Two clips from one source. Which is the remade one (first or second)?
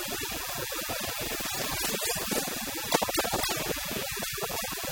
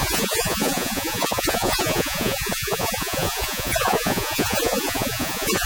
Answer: second